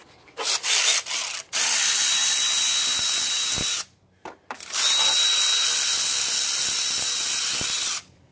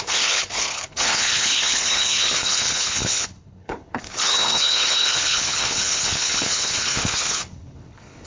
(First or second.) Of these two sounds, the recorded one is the first